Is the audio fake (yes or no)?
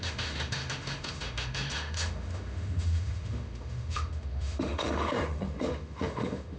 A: yes